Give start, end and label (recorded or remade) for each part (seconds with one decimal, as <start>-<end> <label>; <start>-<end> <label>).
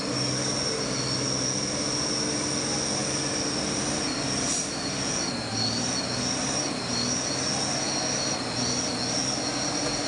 0.0-10.1 recorded